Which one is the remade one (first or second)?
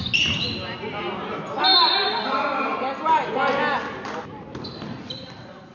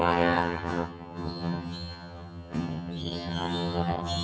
second